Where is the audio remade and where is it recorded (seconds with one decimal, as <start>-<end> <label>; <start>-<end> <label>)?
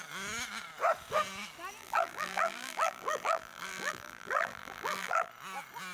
0.0-1.8 recorded; 1.8-5.3 remade; 5.3-5.9 recorded